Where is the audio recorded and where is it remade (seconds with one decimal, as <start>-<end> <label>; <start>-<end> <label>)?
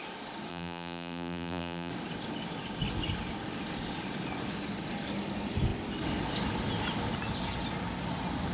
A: 0.0-0.5 recorded; 0.5-1.9 remade; 1.9-8.5 recorded